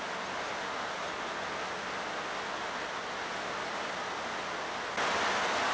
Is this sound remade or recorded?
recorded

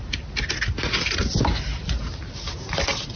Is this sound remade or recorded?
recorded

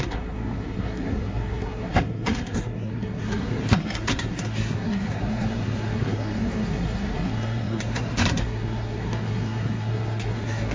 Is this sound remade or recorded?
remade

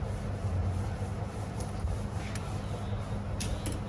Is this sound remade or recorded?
recorded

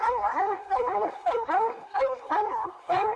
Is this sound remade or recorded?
remade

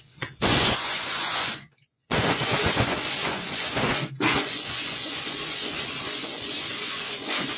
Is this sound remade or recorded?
remade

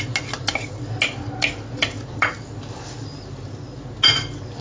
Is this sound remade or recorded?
recorded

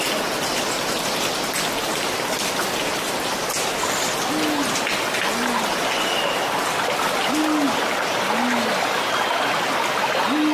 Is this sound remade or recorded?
recorded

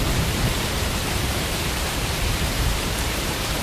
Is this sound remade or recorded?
remade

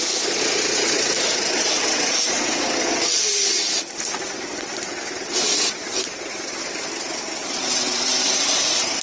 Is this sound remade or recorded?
recorded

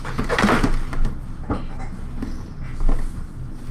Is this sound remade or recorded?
recorded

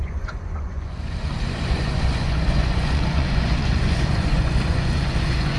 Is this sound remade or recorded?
remade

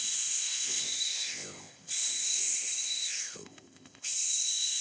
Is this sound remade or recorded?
remade